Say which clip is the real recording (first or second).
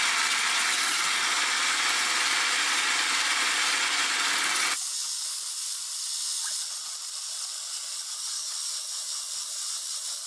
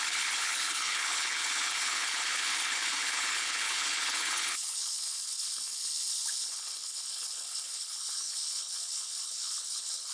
first